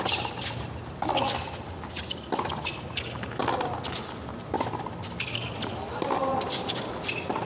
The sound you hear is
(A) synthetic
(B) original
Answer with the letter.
B